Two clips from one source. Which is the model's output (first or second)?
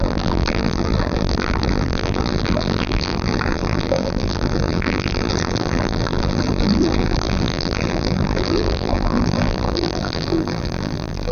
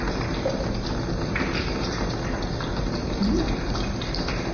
first